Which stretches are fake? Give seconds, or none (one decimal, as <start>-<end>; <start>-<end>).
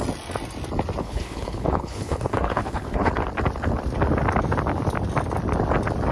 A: 1.0-3.1